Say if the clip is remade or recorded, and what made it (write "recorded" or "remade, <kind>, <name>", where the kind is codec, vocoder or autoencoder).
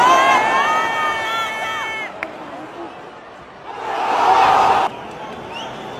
recorded